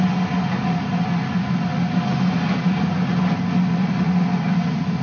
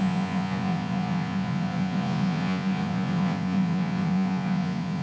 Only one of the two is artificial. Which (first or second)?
second